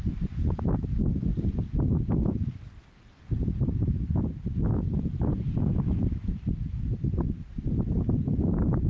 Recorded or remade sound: recorded